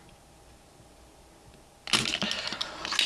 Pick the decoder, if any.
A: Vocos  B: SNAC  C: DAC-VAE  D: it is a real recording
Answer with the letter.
D